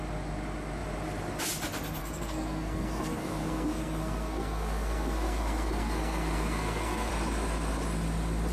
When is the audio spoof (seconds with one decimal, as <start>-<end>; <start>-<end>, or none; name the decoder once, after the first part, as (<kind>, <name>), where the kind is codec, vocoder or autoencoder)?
2.0-7.1 (codec, SNAC)